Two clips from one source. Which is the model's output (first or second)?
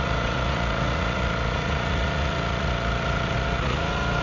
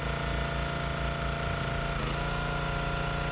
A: first